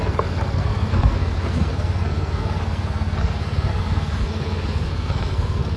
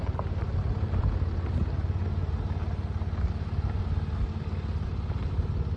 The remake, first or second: first